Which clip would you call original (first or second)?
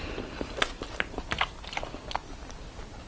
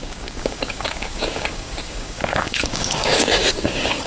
first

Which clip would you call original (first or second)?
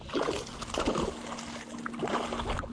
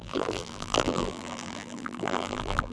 first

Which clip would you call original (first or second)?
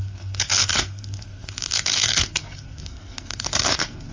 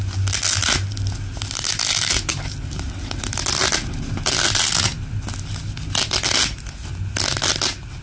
second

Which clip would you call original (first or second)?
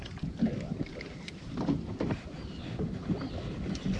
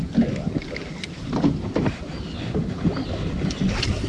second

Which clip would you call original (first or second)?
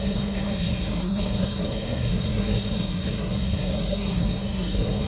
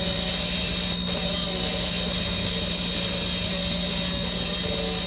second